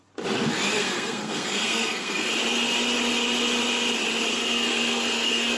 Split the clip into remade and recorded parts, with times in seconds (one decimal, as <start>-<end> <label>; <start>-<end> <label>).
0.0-0.8 recorded; 0.8-2.3 remade; 2.3-4.3 recorded; 4.3-5.6 remade